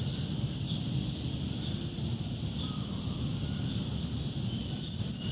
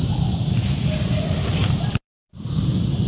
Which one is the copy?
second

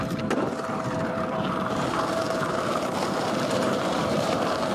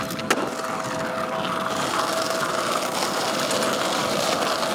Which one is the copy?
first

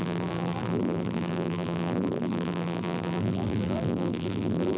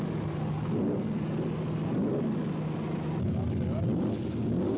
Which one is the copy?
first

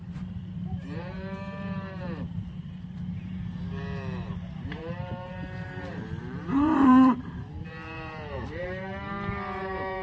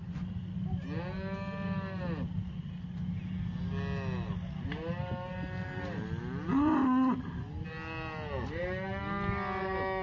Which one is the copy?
first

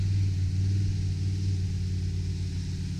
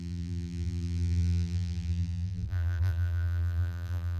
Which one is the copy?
second